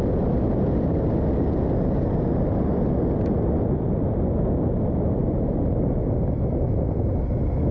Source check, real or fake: real